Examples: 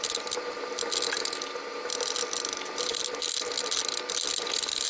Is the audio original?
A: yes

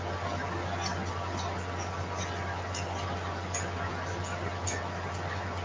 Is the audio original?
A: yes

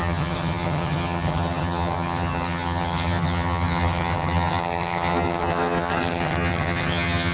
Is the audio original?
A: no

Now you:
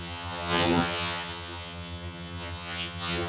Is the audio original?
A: no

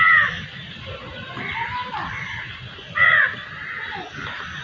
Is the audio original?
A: yes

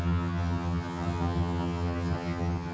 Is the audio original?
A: no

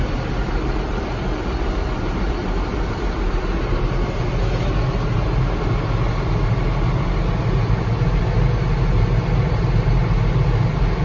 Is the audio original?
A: yes